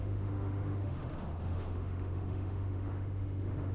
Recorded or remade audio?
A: remade